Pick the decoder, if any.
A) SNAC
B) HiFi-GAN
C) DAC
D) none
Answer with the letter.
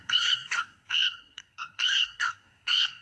A